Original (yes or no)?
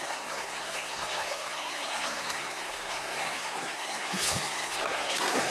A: no